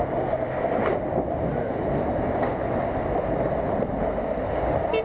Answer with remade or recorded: recorded